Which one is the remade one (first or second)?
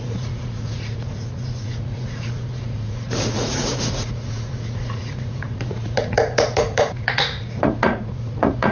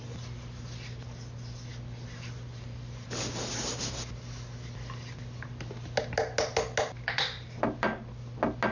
first